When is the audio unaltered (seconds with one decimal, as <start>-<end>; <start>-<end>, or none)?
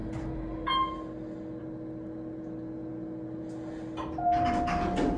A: 0.0-5.2